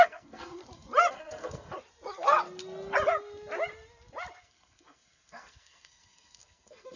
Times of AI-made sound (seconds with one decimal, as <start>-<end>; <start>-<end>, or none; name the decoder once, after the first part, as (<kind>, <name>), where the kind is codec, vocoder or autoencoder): 0.0-0.5 (codec, SNAC); 1.1-1.7; 4.4-7.0